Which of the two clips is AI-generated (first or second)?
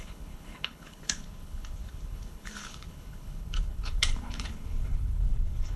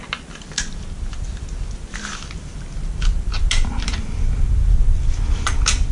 first